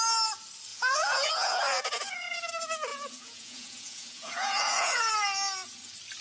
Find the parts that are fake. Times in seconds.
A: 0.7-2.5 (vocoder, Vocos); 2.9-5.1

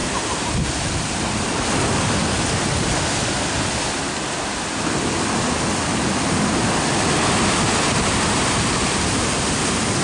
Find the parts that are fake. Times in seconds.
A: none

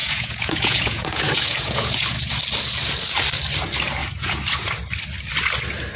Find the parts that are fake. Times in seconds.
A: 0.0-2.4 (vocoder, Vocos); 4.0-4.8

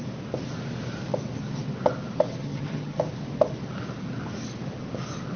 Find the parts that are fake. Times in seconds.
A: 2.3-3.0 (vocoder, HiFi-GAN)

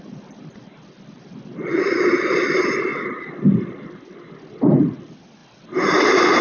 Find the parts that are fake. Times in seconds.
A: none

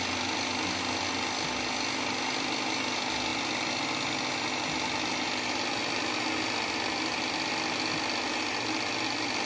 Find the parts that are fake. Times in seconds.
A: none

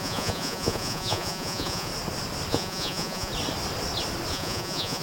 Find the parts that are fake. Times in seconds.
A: 0.0-1.9 (vocoder, Vocos); 2.5-3.3; 4.3-5.0